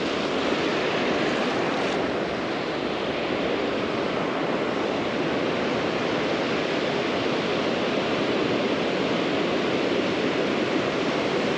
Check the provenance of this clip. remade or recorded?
recorded